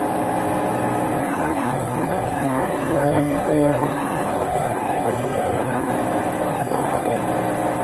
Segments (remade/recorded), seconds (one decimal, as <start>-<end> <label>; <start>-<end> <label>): 0.0-1.2 recorded; 1.2-5.9 remade; 5.9-6.5 recorded; 6.5-7.2 remade; 7.2-7.8 recorded